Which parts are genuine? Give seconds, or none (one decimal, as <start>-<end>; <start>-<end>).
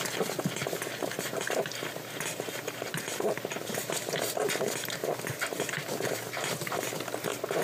0.0-1.0; 4.1-5.5; 7.0-7.6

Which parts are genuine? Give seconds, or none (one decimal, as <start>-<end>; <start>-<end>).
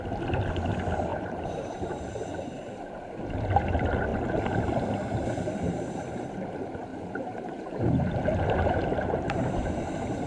0.0-1.1; 2.2-6.9; 9.7-10.3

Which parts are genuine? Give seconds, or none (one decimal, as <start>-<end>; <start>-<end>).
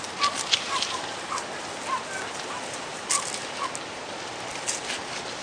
0.0-5.4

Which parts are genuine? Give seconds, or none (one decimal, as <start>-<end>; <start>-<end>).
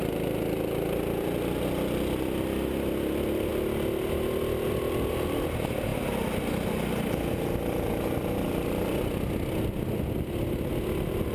0.0-11.3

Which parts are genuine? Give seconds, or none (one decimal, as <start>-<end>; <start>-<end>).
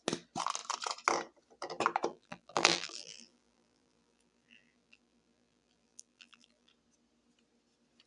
0.0-2.1; 6.7-8.1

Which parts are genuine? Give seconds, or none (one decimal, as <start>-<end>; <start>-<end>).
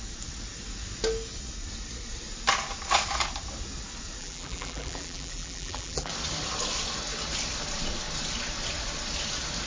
0.0-4.2; 6.1-9.7